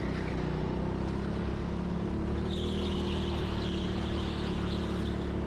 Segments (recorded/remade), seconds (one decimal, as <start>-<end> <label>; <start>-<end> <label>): 0.0-5.5 recorded